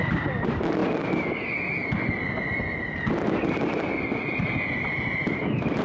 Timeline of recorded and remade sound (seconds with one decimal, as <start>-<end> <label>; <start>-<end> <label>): 0.0-0.8 remade; 0.8-4.3 recorded; 4.3-5.8 remade